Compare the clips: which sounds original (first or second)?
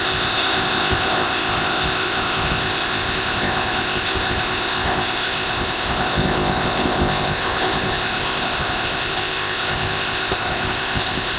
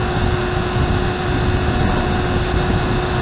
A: second